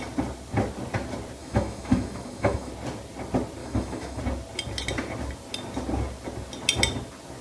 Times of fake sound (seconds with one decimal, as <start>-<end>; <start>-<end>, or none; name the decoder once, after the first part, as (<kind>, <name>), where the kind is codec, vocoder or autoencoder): 1.4-2.7 (autoencoder, DAC-VAE); 3.6-4.2